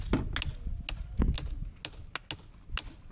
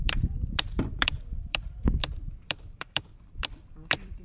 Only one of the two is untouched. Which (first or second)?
first